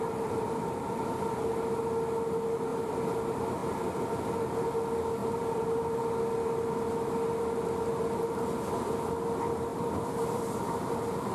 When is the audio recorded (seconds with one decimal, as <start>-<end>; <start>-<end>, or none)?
0.0-2.7; 3.2-5.2; 6.0-9.7; 10.4-11.3